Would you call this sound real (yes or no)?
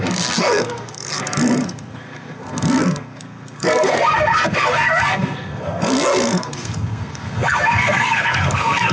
no